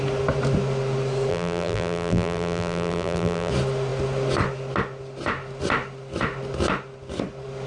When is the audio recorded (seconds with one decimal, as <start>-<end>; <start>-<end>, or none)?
0.0-1.3; 3.5-7.7